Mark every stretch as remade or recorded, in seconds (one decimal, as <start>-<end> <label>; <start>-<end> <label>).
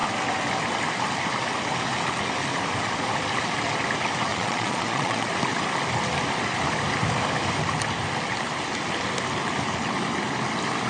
0.0-4.3 recorded; 4.3-5.3 remade; 5.3-10.9 recorded